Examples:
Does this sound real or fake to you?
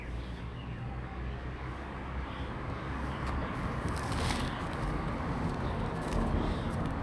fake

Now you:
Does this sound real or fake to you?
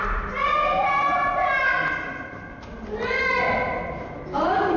real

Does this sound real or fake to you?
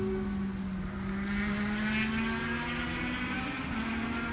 real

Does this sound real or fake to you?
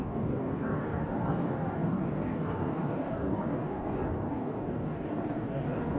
fake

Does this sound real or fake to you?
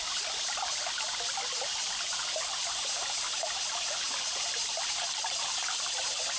real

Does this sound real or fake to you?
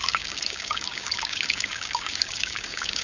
fake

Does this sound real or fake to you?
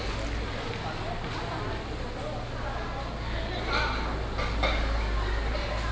real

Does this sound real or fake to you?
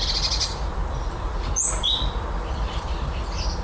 real